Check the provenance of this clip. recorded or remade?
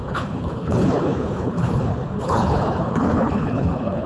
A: remade